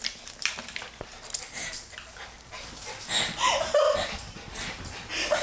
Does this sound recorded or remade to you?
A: recorded